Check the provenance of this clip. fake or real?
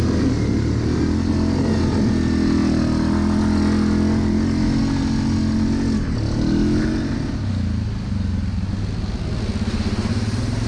real